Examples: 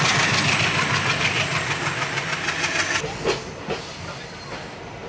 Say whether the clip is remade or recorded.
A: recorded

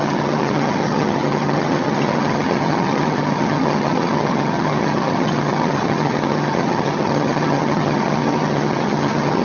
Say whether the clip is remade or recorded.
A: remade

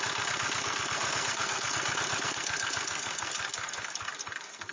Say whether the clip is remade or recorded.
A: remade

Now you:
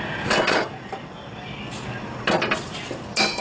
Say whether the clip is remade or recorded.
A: recorded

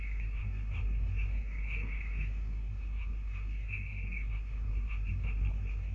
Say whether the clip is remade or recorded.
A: remade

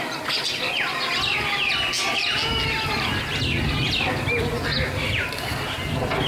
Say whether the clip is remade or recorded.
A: recorded